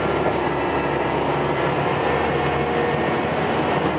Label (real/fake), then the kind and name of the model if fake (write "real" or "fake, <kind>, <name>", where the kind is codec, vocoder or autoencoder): real